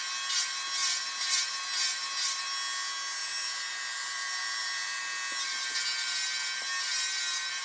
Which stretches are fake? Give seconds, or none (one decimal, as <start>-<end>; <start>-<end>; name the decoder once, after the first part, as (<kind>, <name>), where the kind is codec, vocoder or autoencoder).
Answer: 3.2-5.0 (vocoder, BigVGAN v2)